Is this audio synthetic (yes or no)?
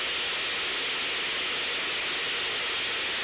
no